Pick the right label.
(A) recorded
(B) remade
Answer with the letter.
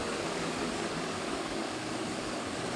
B